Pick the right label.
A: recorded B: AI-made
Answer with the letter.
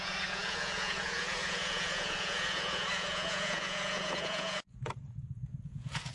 B